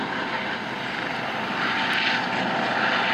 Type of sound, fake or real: real